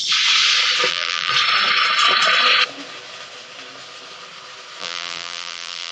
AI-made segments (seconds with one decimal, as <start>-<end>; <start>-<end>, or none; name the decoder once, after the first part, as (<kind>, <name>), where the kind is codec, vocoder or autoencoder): 0.9-1.3 (vocoder, BigVGAN v2); 4.8-5.9